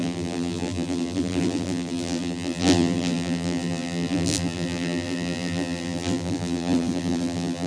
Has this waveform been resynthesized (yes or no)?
yes